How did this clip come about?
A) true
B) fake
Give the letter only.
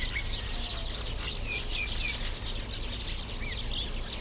A